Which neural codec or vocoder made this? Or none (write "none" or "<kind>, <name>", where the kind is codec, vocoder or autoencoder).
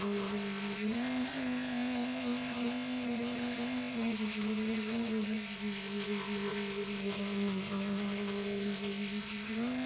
codec, ZipCodec